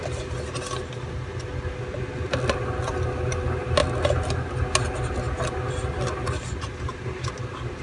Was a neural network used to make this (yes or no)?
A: no